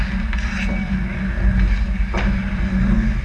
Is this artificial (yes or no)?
no